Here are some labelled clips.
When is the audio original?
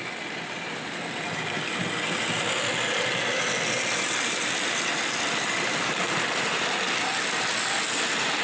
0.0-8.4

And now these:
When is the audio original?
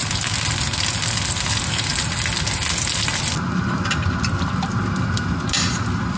0.0-6.2